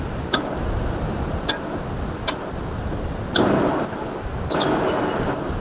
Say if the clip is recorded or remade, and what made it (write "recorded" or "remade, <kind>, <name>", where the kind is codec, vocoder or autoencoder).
recorded